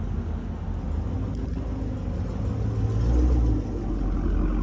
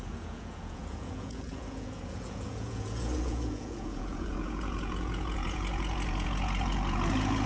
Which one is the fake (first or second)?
second